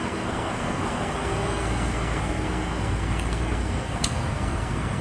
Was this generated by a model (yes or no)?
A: yes